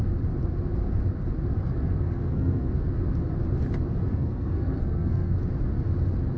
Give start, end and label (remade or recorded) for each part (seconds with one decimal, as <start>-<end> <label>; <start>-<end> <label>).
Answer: 0.0-1.6 recorded; 1.6-2.7 remade; 2.7-4.1 recorded; 4.1-5.4 remade; 5.4-6.4 recorded